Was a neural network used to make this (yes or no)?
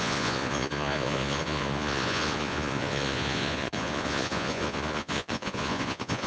yes